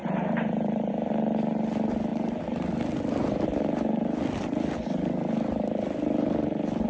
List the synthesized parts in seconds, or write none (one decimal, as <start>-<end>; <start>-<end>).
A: 0.0-0.9; 2.1-2.7